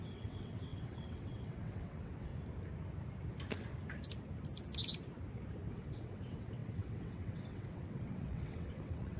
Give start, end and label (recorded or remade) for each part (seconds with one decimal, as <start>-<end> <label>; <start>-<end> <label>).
0.0-2.3 remade; 2.3-5.7 recorded; 5.7-9.2 remade